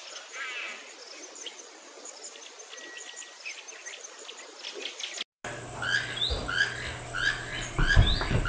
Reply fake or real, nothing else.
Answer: real